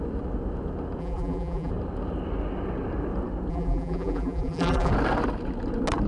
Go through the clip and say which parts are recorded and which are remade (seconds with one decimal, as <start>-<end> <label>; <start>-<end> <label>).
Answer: 0.0-1.0 recorded; 1.0-1.7 remade; 1.7-3.5 recorded; 3.5-4.9 remade; 4.9-6.1 recorded